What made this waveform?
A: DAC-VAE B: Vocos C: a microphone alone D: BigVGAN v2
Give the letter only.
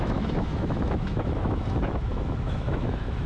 A